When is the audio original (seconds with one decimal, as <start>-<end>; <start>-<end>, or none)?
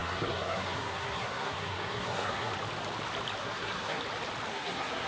2.5-3.4; 4.0-4.5